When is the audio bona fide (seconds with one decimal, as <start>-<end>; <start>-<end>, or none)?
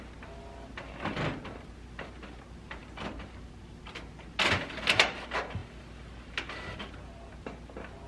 0.0-8.1